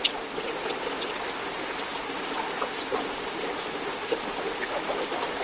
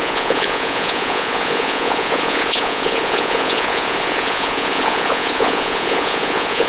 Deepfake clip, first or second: second